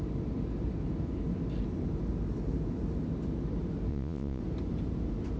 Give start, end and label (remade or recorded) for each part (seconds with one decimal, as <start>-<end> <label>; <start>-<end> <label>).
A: 0.0-3.9 recorded; 3.9-4.4 remade; 4.4-5.4 recorded